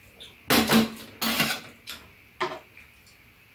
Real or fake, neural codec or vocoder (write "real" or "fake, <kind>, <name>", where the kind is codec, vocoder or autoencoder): real